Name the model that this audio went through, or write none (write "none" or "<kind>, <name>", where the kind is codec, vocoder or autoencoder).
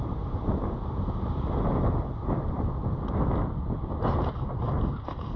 none